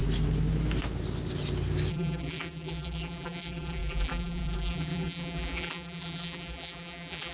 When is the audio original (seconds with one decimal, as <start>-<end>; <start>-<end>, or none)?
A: 0.0-1.9